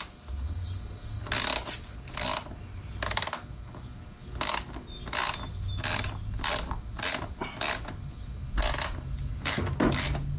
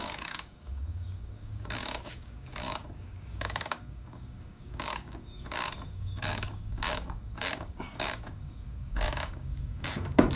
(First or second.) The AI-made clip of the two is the second